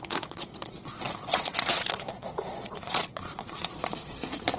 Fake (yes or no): yes